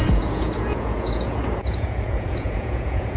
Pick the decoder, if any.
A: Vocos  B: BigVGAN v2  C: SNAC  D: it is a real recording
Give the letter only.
A